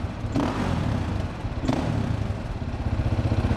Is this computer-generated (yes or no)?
no